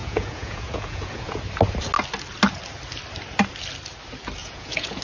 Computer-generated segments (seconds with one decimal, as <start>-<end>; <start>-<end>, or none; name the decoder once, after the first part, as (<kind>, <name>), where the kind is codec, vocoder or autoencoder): 0.0-1.4 (vocoder, Vocos); 4.4-5.0